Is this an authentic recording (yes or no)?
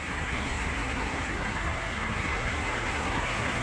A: no